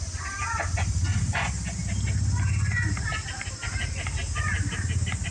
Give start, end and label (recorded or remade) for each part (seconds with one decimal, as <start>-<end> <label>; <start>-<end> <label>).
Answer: 0.0-5.3 recorded